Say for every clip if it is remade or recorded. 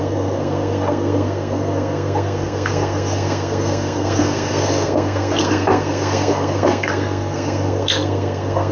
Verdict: remade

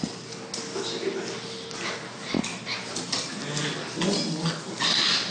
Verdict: recorded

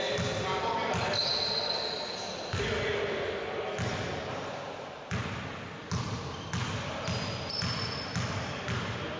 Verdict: recorded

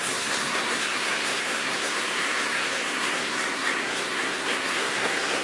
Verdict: remade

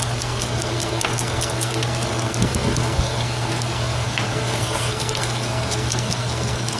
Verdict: remade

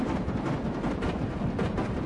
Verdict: recorded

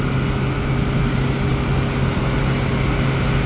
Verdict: recorded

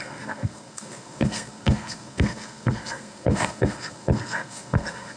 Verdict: remade